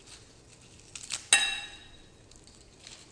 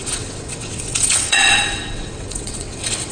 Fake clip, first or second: second